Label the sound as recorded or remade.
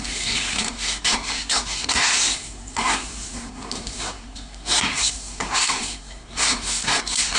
remade